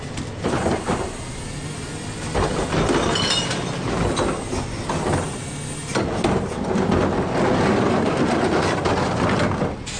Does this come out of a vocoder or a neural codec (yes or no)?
no